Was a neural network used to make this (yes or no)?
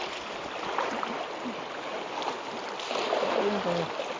no